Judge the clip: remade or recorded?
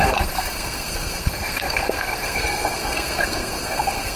remade